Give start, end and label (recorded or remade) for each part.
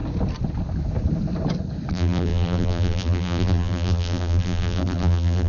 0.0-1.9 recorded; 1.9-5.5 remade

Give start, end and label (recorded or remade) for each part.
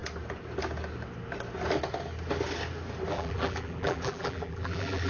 0.0-3.1 recorded; 3.1-5.1 remade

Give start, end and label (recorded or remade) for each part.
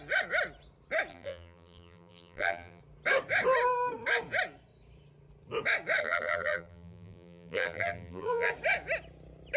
0.0-1.1 recorded; 1.1-2.8 remade; 2.8-6.0 recorded; 6.0-8.5 remade; 8.5-9.6 recorded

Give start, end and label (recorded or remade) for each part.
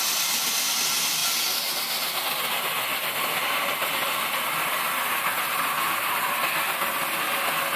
0.0-7.8 recorded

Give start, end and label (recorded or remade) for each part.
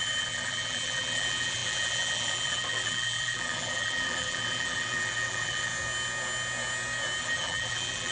0.0-5.7 remade; 5.7-7.2 recorded; 7.2-8.1 remade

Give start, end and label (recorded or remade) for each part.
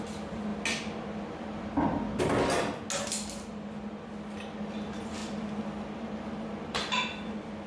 0.0-7.7 recorded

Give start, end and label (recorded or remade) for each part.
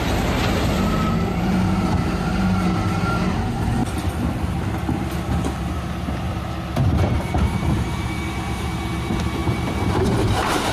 0.0-3.8 remade; 3.8-7.0 recorded; 7.0-10.7 remade